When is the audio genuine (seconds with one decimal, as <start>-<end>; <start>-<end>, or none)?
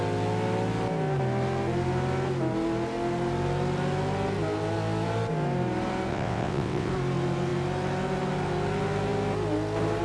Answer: 0.0-6.1; 6.9-10.0